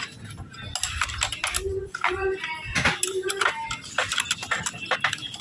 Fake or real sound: real